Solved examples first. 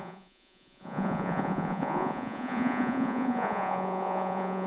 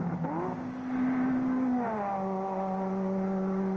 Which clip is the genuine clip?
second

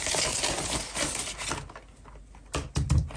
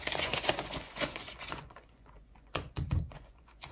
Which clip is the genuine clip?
first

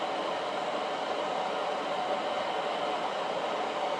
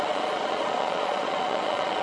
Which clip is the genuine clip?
first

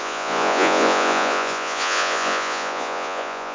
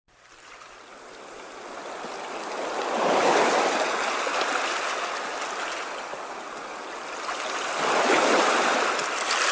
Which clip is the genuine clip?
second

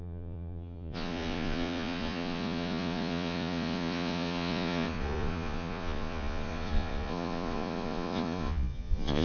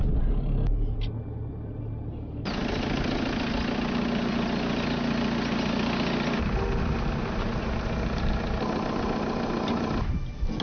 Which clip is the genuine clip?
second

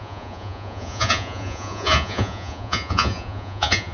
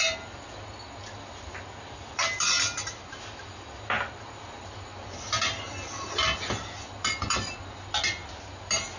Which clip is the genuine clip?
second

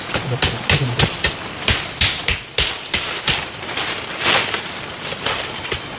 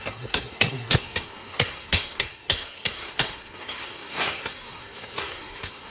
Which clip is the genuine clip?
first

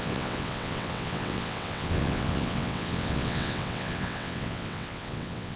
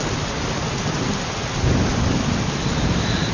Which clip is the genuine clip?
second